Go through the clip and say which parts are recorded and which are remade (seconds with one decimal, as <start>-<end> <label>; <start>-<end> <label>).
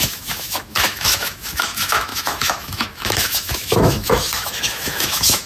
0.0-5.5 remade